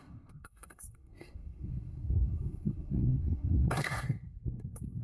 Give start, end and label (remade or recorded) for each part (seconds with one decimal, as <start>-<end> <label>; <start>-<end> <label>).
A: 0.0-5.0 remade